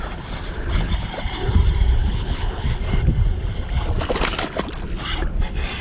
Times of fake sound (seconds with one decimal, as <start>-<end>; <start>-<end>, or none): 2.0-2.8